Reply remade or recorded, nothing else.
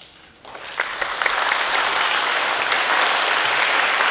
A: recorded